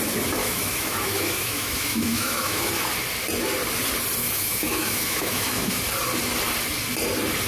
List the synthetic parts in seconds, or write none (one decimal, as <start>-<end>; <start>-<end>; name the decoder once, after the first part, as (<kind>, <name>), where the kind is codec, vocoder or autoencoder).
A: 0.4-2.7 (autoencoder, DAC-VAE); 4.2-5.8